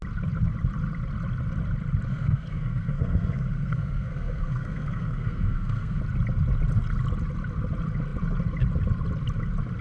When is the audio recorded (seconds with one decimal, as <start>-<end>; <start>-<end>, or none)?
0.0-2.1; 6.0-9.8